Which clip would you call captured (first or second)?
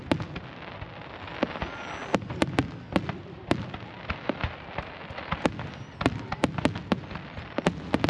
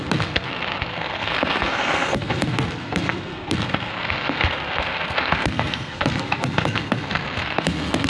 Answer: first